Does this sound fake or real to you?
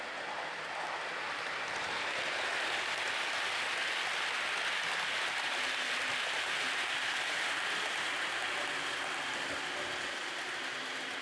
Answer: real